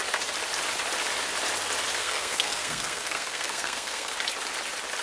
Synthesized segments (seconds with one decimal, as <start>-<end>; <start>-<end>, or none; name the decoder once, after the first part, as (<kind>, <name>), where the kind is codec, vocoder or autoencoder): 2.0-4.1 (codec, SNAC)